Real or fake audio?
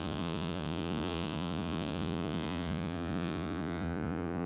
fake